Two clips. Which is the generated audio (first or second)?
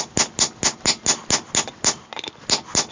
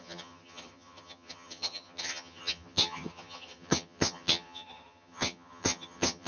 second